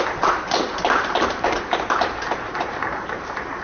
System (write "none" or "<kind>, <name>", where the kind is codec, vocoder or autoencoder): vocoder, BigVGAN v2